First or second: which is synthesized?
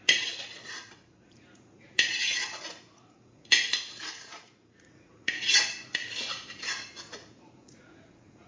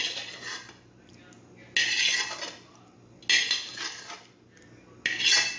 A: first